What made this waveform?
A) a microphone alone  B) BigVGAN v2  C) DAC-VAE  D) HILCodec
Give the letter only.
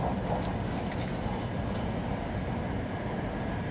A